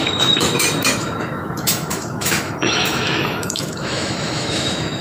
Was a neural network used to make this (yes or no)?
yes